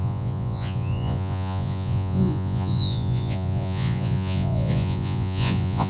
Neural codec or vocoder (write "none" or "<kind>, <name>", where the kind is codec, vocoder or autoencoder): vocoder, Vocos